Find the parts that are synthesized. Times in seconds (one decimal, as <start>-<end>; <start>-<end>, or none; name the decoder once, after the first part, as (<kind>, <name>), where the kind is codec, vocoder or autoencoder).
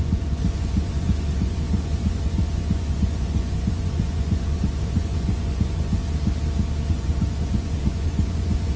0.0-6.0 (vocoder, Vocos); 6.9-8.8